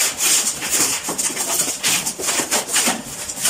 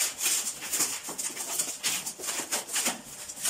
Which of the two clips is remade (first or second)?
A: first